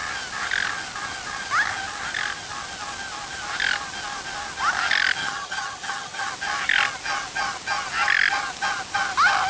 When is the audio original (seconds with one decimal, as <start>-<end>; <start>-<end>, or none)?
0.0-5.2; 6.3-9.5